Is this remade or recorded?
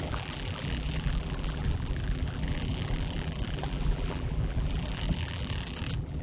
remade